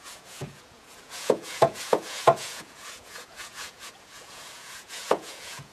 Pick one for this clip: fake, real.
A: fake